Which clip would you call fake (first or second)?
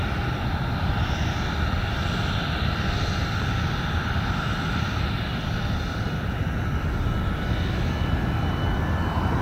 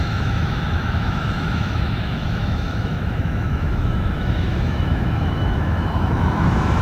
second